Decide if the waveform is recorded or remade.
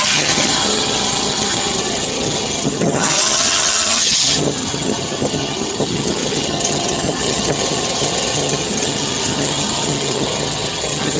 remade